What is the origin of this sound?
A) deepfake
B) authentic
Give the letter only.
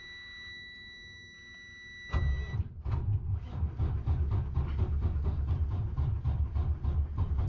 B